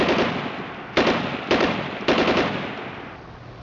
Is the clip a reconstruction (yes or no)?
no